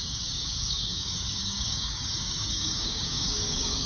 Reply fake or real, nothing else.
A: fake